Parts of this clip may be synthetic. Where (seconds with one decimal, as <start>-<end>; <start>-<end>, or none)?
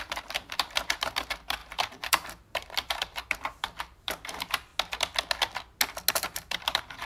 0.0-4.7; 6.1-7.1